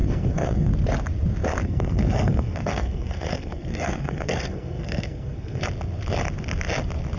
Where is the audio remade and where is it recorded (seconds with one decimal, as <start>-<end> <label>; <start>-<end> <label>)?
0.0-0.7 remade; 0.7-1.6 recorded; 1.6-5.6 remade; 5.6-7.2 recorded